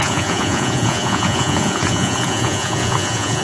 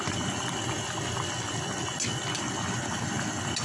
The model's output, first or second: first